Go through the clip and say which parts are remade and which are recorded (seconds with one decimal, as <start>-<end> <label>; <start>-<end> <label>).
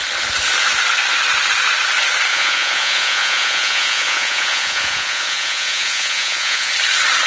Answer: 0.0-2.3 recorded; 2.3-6.7 remade; 6.7-7.3 recorded